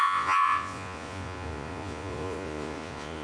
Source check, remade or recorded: remade